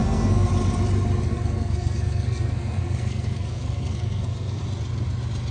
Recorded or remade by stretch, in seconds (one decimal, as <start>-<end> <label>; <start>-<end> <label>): 0.0-0.5 remade; 0.5-1.3 recorded; 1.3-4.6 remade; 4.6-5.5 recorded